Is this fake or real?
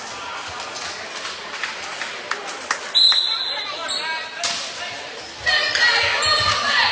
real